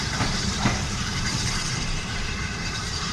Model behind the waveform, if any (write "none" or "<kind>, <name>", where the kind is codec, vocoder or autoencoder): vocoder, BigVGAN v2